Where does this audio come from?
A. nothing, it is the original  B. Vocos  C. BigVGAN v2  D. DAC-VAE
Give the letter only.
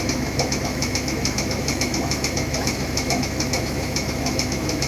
D